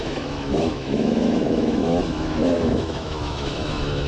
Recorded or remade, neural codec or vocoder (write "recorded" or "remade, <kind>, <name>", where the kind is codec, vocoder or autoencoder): remade, autoencoder, DAC-VAE